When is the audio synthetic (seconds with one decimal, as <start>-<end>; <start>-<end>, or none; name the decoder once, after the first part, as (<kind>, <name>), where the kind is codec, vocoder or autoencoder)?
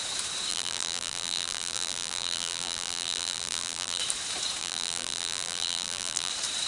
0.5-4.0 (vocoder, BigVGAN v2); 4.6-6.3